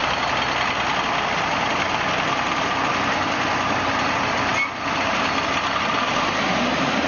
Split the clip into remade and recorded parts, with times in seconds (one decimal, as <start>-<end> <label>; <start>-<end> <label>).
0.0-7.1 recorded